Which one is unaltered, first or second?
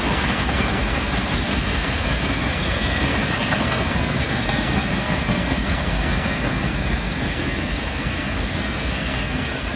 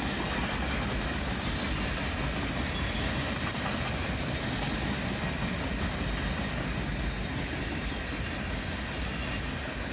second